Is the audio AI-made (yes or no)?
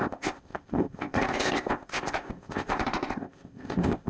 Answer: yes